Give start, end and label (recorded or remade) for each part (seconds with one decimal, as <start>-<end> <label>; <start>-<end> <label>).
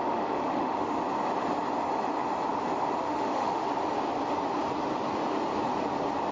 0.0-1.0 remade; 1.0-3.0 recorded; 3.0-3.6 remade; 3.6-6.3 recorded